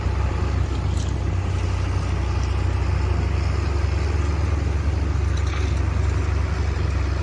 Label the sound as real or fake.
real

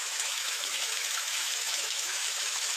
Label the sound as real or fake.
fake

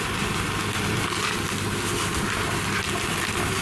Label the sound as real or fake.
real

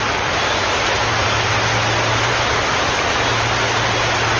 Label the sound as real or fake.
real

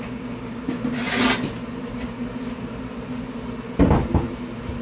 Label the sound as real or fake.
real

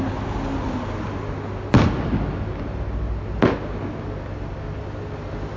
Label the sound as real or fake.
real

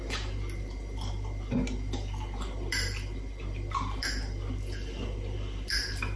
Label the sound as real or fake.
real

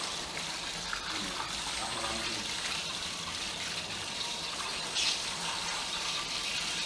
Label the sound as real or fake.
fake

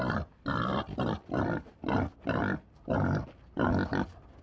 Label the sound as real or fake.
real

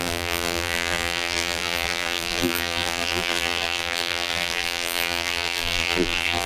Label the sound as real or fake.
fake